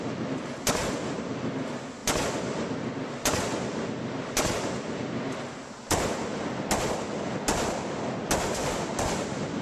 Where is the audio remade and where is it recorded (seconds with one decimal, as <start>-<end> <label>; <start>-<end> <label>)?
0.0-9.6 recorded